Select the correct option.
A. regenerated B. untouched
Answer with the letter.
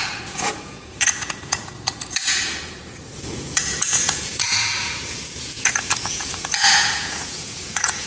A